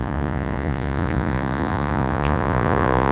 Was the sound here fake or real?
fake